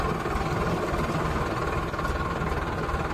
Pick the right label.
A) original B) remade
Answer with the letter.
A